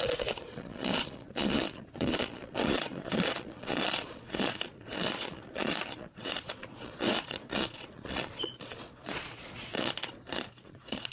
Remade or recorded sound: remade